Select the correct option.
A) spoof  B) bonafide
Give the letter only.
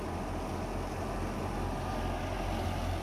B